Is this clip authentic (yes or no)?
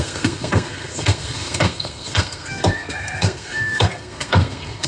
no